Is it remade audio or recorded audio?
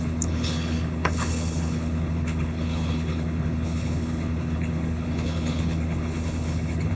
remade